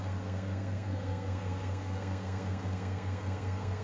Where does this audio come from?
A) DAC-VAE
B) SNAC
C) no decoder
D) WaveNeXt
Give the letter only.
B